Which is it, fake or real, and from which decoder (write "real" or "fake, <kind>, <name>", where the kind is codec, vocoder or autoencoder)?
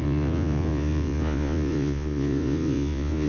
fake, vocoder, Vocos